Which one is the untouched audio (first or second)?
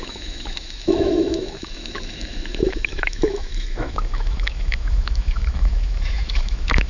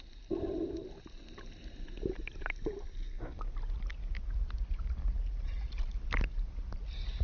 second